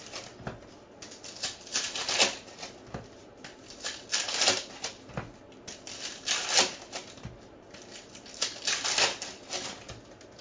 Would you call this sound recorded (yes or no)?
yes